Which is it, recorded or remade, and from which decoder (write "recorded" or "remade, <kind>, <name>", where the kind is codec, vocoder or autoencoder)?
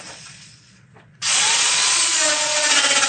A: remade, vocoder, Vocos